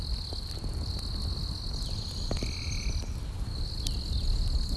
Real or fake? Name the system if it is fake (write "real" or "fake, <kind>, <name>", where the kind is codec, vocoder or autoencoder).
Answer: real